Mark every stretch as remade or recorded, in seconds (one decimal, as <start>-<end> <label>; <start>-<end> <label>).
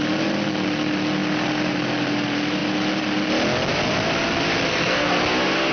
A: 0.0-4.7 recorded; 4.7-5.2 remade; 5.2-5.7 recorded